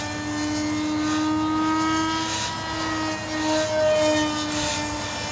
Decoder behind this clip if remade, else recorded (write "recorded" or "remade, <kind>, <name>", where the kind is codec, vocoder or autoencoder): recorded